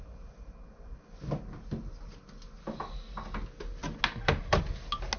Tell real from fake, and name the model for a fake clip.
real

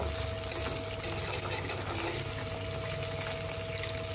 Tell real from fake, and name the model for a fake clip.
real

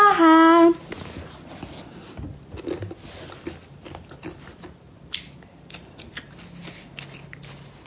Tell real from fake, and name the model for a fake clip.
real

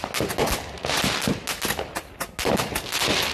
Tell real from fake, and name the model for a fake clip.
real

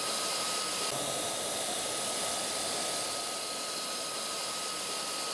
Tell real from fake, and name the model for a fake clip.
real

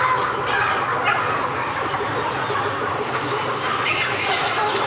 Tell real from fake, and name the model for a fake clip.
real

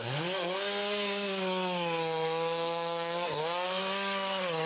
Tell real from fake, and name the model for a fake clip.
fake, codec, SNAC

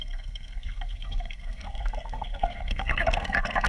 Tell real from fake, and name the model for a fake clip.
fake, codec, SNAC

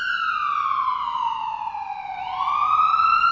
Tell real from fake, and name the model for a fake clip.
real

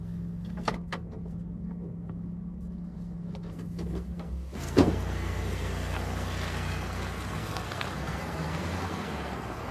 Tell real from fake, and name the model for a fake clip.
fake, codec, SNAC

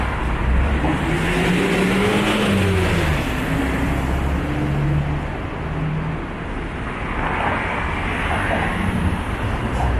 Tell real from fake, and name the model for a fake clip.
real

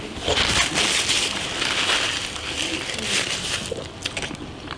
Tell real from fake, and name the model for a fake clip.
real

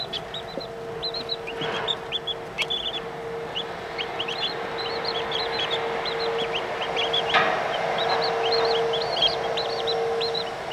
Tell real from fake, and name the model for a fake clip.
real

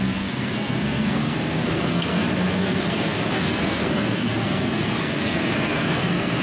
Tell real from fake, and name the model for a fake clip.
fake, codec, SNAC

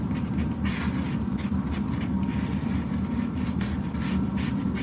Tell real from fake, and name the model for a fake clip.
real